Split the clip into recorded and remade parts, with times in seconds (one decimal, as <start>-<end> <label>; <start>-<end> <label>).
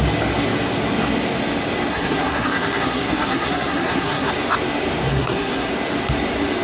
0.0-1.9 recorded; 1.9-4.3 remade; 4.3-5.1 recorded; 5.1-5.7 remade; 5.7-6.6 recorded